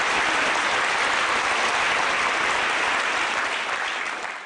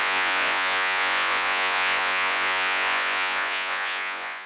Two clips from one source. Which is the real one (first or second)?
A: first